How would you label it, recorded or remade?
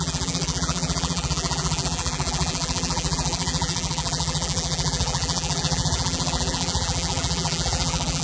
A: remade